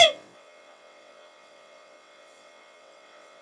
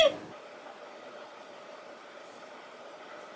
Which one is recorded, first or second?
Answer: second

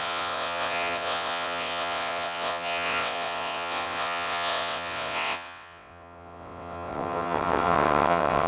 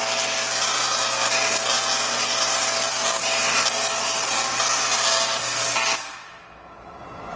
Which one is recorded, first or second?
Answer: second